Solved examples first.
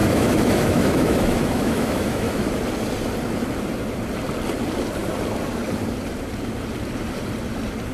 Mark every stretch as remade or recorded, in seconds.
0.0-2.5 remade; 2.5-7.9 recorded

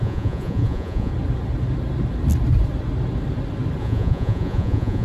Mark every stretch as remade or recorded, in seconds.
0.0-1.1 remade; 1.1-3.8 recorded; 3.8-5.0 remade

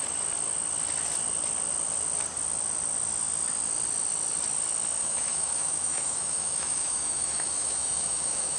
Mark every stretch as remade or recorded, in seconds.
0.0-5.0 recorded; 5.0-8.6 remade

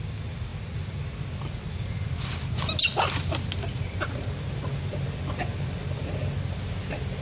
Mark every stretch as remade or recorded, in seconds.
0.0-7.2 recorded

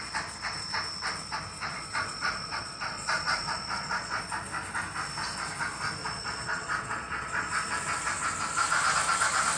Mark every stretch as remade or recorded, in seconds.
0.0-1.7 recorded; 1.7-4.2 remade; 4.2-6.0 recorded; 6.0-7.5 remade; 7.5-9.6 recorded